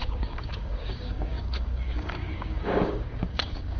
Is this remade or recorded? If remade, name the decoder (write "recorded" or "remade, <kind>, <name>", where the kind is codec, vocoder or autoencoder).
remade, codec, DAC